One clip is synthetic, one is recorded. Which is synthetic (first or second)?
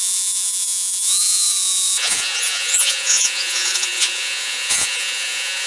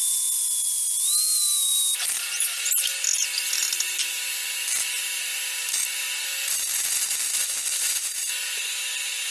first